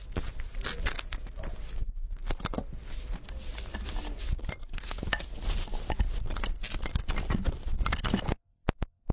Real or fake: real